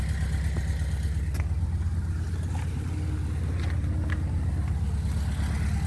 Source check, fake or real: real